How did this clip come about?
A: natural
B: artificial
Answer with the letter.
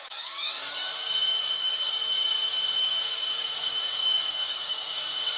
B